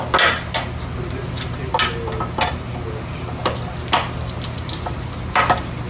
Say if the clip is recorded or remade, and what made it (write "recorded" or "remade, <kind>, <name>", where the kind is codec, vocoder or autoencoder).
recorded